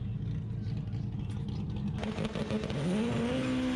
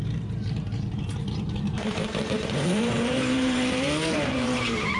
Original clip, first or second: first